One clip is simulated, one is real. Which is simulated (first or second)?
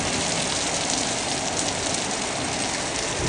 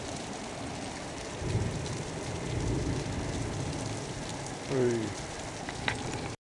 second